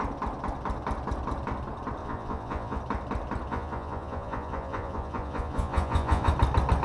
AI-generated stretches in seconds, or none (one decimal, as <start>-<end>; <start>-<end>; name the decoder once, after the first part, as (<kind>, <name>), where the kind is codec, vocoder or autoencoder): 2.0-2.8 (vocoder, Vocos); 3.5-6.3